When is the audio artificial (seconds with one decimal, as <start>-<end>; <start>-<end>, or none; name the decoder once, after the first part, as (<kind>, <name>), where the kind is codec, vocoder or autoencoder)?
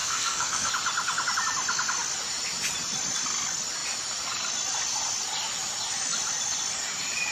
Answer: 0.0-0.7 (codec, SNAC)